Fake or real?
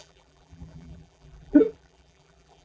fake